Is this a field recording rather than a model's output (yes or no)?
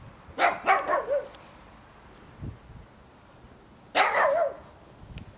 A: yes